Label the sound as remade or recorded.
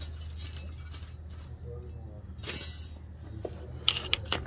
recorded